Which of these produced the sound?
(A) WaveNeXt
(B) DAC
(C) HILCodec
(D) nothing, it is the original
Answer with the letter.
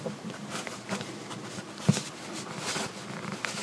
D